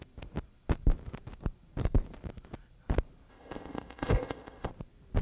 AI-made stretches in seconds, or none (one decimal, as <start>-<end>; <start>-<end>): 3.3-4.7